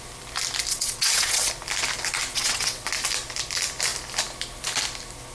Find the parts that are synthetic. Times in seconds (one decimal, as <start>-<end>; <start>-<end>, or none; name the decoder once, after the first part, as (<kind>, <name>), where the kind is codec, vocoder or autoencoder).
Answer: 0.7-1.5 (vocoder, WaveNeXt); 2.3-2.9